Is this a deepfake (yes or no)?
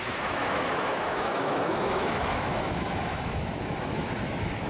yes